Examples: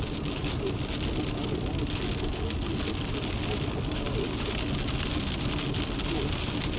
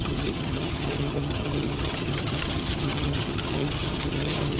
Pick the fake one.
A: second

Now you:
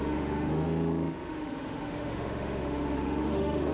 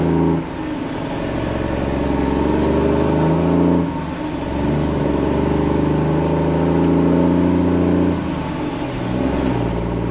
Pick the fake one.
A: first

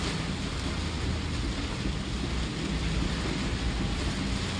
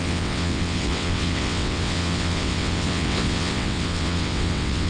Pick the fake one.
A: second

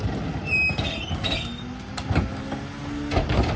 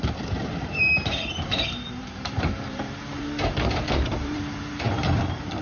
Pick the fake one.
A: second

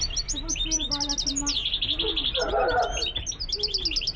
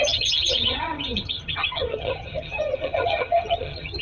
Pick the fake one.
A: second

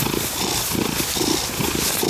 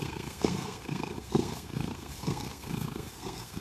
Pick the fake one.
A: second